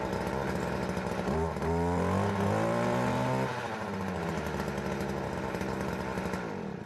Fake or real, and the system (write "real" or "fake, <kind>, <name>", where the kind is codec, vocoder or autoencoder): real